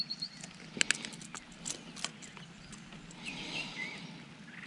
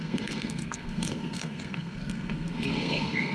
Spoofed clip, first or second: second